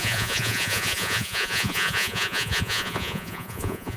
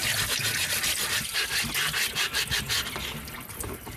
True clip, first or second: second